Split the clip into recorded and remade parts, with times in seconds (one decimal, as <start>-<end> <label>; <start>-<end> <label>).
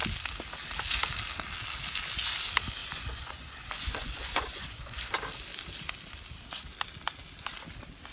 0.0-2.8 recorded; 2.8-5.1 remade; 5.1-8.1 recorded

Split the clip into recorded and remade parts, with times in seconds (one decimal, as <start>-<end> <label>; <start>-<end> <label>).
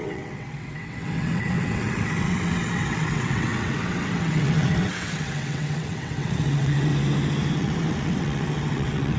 0.0-6.9 remade; 6.9-7.5 recorded; 7.5-9.2 remade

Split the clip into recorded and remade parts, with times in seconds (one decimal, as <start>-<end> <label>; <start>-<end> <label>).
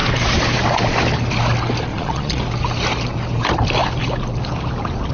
0.0-1.9 recorded; 1.9-2.4 remade; 2.4-5.1 recorded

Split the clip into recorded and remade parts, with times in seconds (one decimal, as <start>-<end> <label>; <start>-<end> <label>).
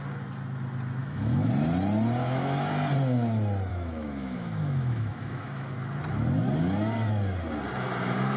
0.0-1.0 recorded; 1.0-1.5 remade; 1.5-2.2 recorded; 2.2-2.7 remade; 2.7-3.7 recorded; 3.7-5.7 remade; 5.7-8.4 recorded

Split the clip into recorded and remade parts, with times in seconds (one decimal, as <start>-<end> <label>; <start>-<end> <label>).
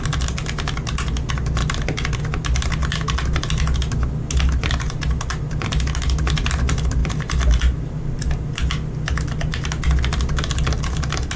0.0-11.4 recorded